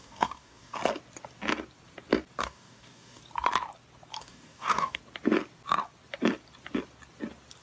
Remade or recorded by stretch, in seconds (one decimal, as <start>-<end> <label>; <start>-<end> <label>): 0.0-0.8 remade; 0.8-2.4 recorded; 2.4-3.2 remade; 3.2-4.2 recorded; 4.2-5.0 remade; 5.0-7.6 recorded

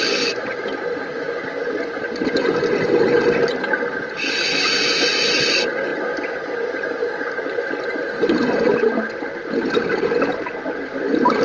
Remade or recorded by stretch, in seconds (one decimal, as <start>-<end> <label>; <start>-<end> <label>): 0.0-11.4 recorded

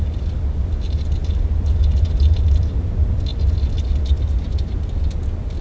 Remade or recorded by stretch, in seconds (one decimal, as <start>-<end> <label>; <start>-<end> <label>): 0.0-5.6 recorded

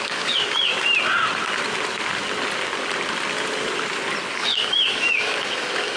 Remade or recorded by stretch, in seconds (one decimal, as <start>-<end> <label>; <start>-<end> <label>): 0.0-0.7 remade; 0.7-4.3 recorded; 4.3-6.0 remade